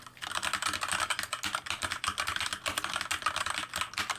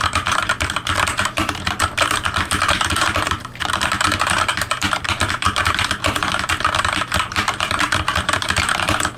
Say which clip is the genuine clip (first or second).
first